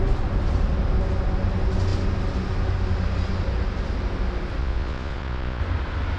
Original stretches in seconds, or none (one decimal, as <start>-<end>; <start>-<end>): 0.0-4.6; 5.6-6.2